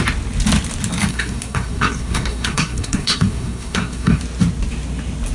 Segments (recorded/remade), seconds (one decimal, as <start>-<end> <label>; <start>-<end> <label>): 0.0-1.1 recorded; 1.1-4.2 remade; 4.2-5.3 recorded

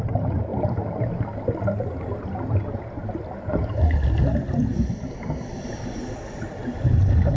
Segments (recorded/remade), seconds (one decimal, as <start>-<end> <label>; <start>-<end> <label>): 0.0-7.4 recorded

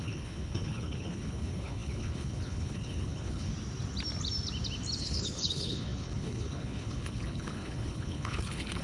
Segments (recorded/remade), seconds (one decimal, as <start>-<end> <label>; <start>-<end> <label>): 0.0-3.5 remade; 3.5-5.0 recorded; 5.0-8.8 remade

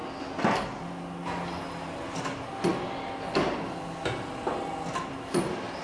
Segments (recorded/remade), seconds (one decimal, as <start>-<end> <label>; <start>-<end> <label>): 0.0-5.8 recorded

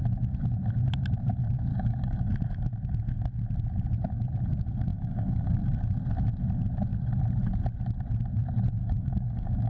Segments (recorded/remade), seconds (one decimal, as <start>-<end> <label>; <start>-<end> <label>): 0.0-1.7 recorded; 1.7-2.3 remade; 2.3-4.9 recorded; 4.9-5.6 remade; 5.6-8.8 recorded; 8.8-9.7 remade

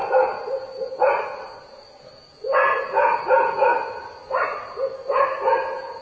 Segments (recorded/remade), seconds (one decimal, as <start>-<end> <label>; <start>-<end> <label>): 0.0-6.0 recorded

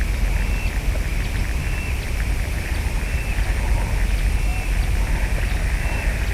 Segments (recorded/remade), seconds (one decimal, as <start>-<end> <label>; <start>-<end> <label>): 0.0-1.1 recorded; 1.1-3.5 remade; 3.5-6.3 recorded